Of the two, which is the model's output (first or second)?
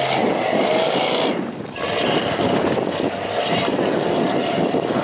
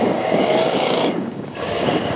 second